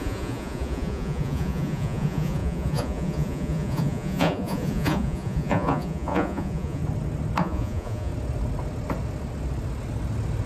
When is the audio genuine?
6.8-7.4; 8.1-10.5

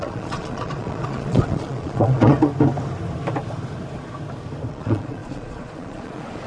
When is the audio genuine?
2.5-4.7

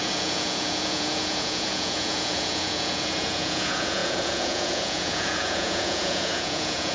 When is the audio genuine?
none

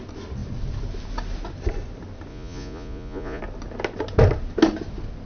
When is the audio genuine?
0.0-2.3; 3.4-5.3